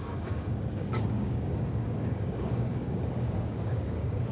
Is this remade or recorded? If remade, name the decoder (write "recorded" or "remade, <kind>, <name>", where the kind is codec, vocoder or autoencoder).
remade, codec, DAC